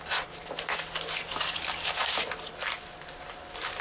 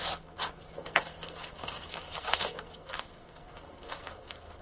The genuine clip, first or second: first